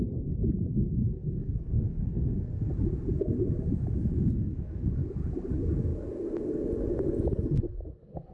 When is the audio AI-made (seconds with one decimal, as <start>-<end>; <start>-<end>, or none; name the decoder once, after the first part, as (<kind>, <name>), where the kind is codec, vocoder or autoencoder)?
1.0-2.7 (codec, SNAC); 4.0-4.8